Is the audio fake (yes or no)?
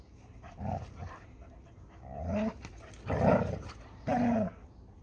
no